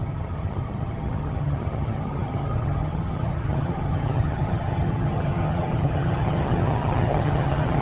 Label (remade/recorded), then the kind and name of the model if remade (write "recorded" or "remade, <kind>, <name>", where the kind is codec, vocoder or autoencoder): remade, vocoder, HiFi-GAN